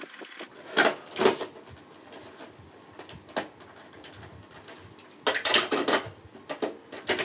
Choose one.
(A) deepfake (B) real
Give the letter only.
B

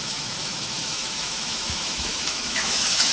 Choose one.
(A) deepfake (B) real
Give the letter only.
A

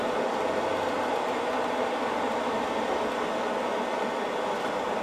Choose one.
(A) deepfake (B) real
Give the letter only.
B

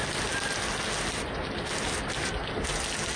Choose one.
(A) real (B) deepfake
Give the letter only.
A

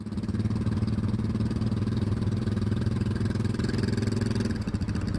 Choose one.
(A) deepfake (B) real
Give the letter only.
B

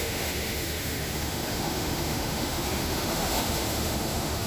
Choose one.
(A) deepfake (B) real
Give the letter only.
A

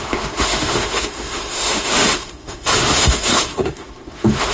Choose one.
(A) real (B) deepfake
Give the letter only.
B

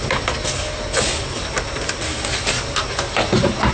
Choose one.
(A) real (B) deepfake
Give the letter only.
A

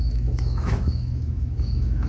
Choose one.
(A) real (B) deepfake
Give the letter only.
B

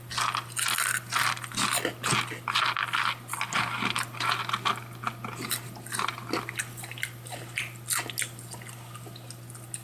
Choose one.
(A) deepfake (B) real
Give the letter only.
B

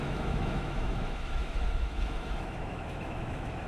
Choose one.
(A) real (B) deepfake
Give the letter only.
B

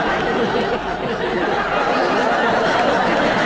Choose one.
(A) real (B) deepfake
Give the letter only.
A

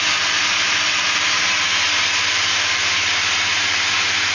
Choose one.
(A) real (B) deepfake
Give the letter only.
A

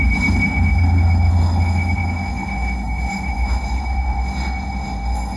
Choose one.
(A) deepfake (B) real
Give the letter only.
A